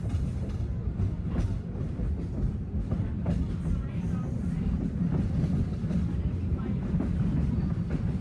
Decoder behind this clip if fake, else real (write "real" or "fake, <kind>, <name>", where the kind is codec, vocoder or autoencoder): real